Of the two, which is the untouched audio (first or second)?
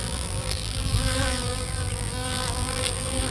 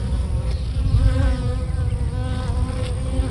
second